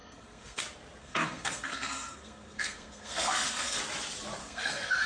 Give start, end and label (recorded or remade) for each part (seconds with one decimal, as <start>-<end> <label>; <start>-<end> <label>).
0.0-0.6 remade; 0.6-1.0 recorded; 1.0-3.8 remade; 3.8-4.4 recorded; 4.4-5.1 remade